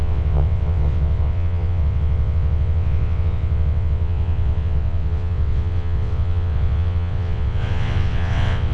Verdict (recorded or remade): remade